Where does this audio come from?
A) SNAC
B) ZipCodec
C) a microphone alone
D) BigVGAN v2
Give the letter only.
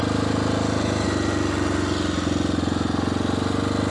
C